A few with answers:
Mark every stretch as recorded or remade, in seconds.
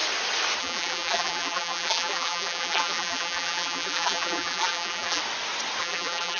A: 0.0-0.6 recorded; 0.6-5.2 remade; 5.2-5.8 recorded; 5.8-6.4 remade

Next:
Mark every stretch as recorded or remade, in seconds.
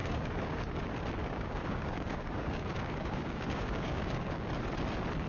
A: 0.0-0.6 remade; 0.6-1.2 recorded; 1.2-4.4 remade; 4.4-5.3 recorded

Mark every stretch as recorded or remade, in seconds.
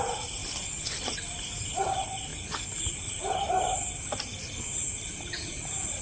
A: 0.0-0.4 remade; 0.4-1.6 recorded; 1.6-6.0 remade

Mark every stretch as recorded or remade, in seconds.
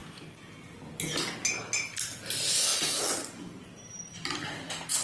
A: 0.0-5.0 recorded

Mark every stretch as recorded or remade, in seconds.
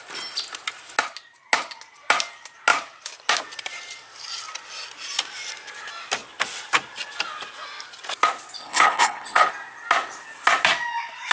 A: 0.0-8.6 recorded; 8.6-9.5 remade; 9.5-11.3 recorded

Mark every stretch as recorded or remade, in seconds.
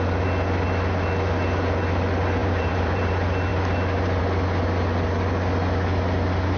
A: 0.0-2.4 recorded; 2.4-3.1 remade; 3.1-6.6 recorded